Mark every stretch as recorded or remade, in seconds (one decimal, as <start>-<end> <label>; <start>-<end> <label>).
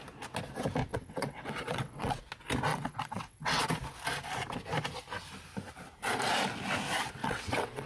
0.0-0.9 recorded; 0.9-2.2 remade; 2.2-2.7 recorded; 2.7-3.6 remade; 3.6-7.2 recorded; 7.2-7.9 remade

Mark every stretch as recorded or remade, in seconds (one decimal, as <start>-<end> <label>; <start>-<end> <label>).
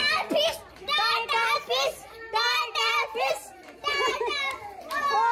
0.0-3.2 remade; 3.2-5.3 recorded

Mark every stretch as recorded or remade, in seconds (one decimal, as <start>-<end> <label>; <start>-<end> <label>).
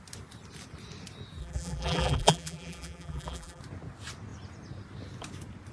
0.0-1.4 recorded; 1.4-3.6 remade; 3.6-5.7 recorded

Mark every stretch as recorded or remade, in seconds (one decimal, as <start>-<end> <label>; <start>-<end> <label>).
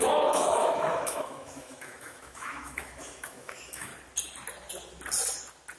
0.0-3.9 remade; 3.9-5.8 recorded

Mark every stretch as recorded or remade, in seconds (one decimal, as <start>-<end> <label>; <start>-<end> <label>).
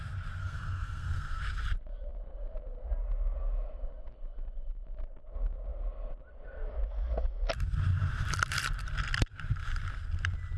0.0-0.4 recorded; 0.4-1.4 remade; 1.4-10.6 recorded